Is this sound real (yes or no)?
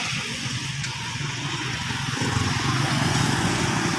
no